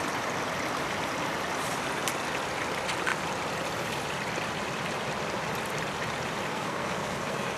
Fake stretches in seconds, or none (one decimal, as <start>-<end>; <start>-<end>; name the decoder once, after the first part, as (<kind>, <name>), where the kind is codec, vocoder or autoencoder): 6.5-7.6 (codec, SNAC)